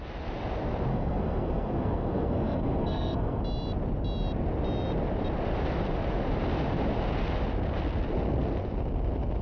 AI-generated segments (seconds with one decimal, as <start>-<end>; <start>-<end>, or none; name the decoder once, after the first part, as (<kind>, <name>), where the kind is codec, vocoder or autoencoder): 0.9-3.4 (codec, SNAC)